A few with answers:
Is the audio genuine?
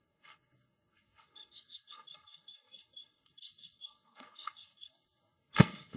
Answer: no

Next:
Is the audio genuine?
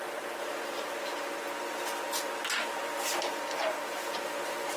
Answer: yes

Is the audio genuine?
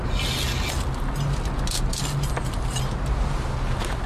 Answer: yes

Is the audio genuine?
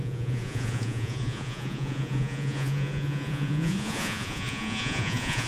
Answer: no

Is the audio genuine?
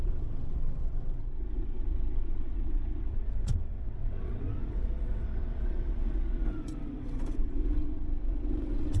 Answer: no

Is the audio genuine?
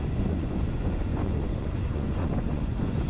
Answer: no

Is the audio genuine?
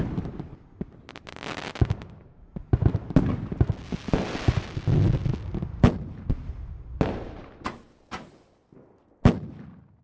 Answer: yes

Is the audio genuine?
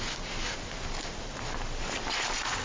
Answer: yes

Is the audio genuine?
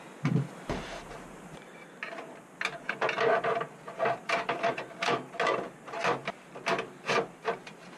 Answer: yes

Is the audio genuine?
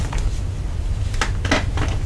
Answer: yes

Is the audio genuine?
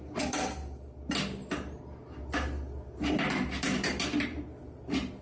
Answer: yes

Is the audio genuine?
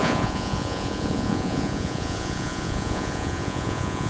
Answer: no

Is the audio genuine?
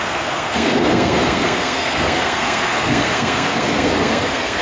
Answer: no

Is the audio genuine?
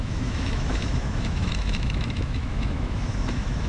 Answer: no